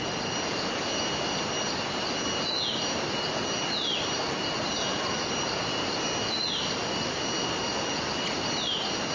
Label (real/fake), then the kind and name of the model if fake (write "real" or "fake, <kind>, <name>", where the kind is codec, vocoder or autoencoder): real